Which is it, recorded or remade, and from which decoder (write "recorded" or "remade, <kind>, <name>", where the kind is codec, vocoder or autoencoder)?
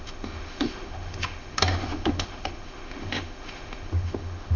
remade, autoencoder, DAC-VAE